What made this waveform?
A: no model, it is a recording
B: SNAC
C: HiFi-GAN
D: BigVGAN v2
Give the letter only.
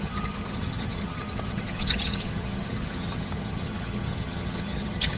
C